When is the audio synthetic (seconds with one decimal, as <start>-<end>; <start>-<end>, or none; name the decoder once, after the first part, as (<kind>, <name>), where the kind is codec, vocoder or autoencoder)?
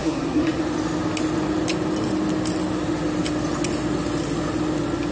0.0-0.6 (codec, SNAC)